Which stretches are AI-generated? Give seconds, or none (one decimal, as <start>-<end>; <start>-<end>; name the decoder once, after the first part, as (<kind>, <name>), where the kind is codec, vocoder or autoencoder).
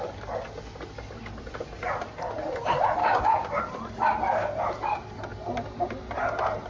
3.0-3.6 (codec, DAC)